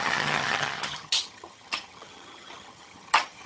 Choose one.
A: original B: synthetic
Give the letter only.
B